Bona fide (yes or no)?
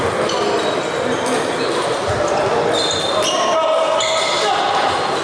yes